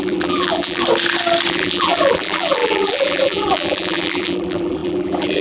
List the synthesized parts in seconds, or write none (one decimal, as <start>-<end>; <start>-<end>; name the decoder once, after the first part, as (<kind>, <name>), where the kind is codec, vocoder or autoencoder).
0.0-0.8 (vocoder, BigVGAN v2); 1.5-5.4